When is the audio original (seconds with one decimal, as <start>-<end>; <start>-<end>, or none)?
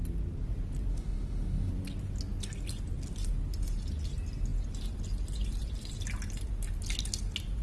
0.0-0.9; 1.7-7.6